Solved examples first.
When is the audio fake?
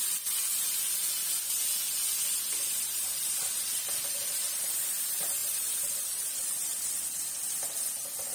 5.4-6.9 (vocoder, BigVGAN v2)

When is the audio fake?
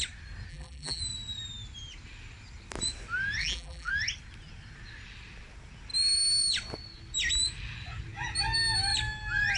0.5-1.0 (vocoder, BigVGAN v2); 3.4-3.9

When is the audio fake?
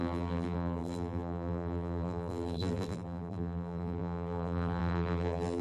0.0-5.6 (vocoder, BigVGAN v2)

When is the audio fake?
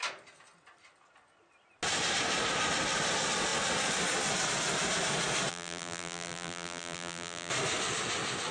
5.5-7.5 (vocoder, BigVGAN v2)